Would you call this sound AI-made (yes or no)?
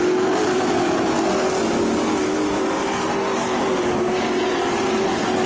no